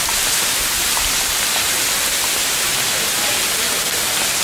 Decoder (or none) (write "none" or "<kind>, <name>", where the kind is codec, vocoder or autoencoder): none